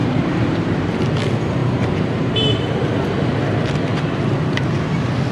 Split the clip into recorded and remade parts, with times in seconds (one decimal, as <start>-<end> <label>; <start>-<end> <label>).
0.0-0.9 remade; 0.9-1.6 recorded; 1.6-2.9 remade; 2.9-5.3 recorded